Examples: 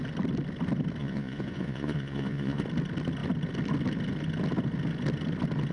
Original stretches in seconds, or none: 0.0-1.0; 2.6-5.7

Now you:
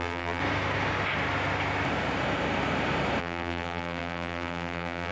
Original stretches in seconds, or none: 0.4-3.2

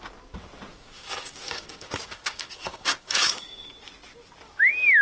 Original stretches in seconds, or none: 0.0-0.7; 3.7-5.0

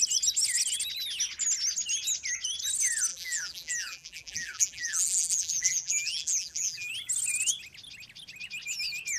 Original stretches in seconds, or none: 0.0-3.1; 6.9-9.2

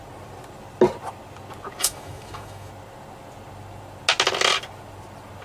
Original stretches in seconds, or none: 0.0-1.8; 2.7-5.4